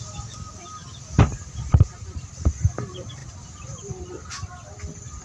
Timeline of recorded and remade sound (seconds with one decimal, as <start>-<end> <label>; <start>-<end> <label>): 0.0-3.2 recorded; 3.2-4.1 remade; 4.1-5.2 recorded